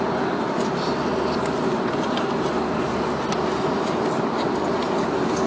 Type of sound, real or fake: real